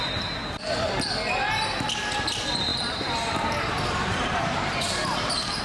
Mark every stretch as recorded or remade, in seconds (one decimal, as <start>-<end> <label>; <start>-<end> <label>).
0.0-2.7 recorded; 2.7-5.6 remade